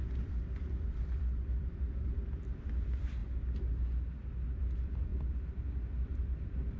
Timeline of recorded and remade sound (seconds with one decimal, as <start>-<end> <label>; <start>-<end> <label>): 0.0-3.2 remade; 3.2-4.6 recorded; 4.6-6.8 remade